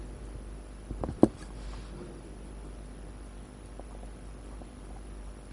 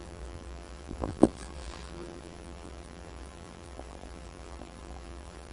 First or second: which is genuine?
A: first